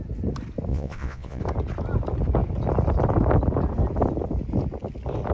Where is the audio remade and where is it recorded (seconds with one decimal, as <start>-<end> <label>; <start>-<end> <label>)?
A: 0.0-0.7 recorded; 0.7-1.4 remade; 1.4-5.3 recorded